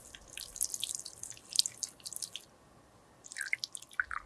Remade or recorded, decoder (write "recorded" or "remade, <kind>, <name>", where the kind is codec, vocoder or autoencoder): recorded